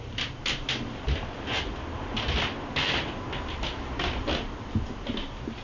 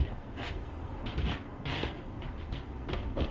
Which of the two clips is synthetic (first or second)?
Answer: second